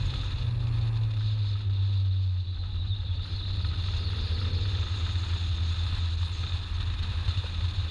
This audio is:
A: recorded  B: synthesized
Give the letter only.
A